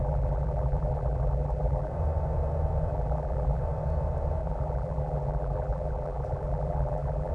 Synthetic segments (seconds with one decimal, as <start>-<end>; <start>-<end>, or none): 0.0-1.9; 2.9-3.6; 4.4-7.3